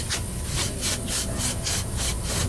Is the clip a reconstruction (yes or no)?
no